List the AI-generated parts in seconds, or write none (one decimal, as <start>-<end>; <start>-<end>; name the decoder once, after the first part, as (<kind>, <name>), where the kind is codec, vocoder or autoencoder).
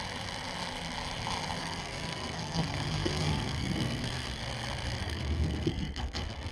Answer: 1.6-4.4 (codec, SNAC); 5.0-6.5